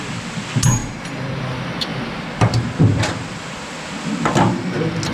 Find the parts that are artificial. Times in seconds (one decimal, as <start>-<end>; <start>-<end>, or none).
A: none